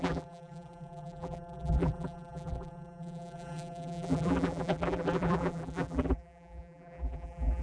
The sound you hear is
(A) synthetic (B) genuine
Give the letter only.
A